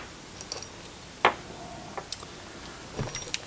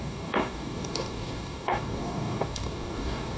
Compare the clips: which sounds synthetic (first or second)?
second